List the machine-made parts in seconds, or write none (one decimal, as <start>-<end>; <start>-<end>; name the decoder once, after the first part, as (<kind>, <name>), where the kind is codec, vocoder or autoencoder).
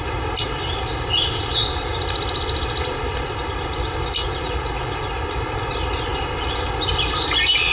none